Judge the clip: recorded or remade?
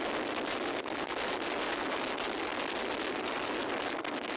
recorded